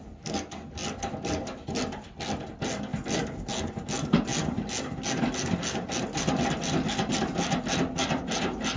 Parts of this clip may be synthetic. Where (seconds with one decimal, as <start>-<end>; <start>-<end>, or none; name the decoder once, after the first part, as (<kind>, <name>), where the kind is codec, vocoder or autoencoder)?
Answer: none